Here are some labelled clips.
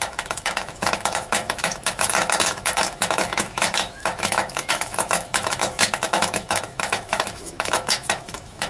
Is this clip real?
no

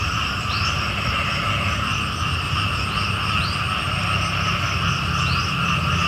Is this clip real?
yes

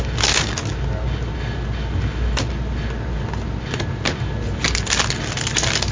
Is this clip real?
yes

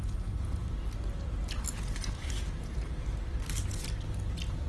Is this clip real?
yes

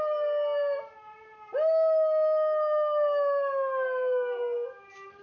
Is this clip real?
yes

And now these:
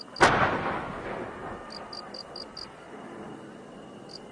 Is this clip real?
yes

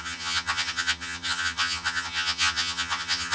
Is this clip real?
no